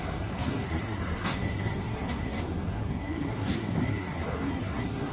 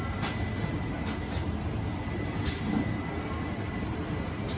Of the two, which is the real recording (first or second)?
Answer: second